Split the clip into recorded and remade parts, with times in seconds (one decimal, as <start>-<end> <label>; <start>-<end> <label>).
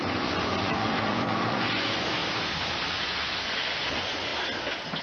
0.0-2.2 remade; 2.2-2.9 recorded; 2.9-4.3 remade; 4.3-5.0 recorded